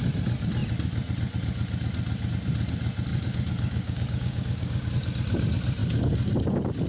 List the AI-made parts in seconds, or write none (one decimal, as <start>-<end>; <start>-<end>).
3.1-4.9

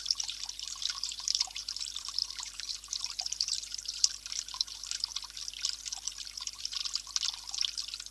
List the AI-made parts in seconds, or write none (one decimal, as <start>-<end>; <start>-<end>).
0.0-5.1; 6.1-6.8

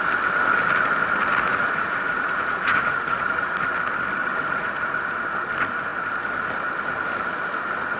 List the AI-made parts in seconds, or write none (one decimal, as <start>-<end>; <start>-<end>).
1.3-3.6; 4.2-5.1

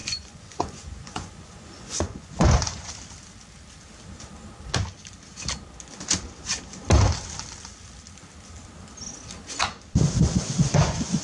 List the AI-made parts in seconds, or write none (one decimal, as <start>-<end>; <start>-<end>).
0.0-2.9; 10.6-11.2

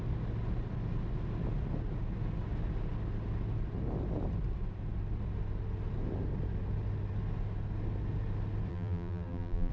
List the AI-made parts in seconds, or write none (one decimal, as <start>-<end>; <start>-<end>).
8.7-9.7

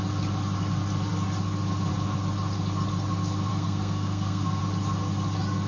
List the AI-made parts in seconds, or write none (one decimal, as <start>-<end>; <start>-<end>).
3.5-4.6

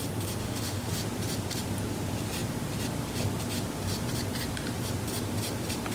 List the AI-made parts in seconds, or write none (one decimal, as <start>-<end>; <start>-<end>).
0.4-0.9

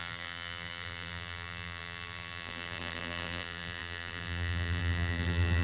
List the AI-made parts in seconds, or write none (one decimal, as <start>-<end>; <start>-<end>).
0.0-5.6